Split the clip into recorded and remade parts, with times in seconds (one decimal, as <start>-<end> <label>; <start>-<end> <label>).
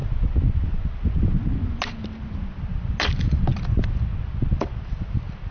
0.0-5.5 recorded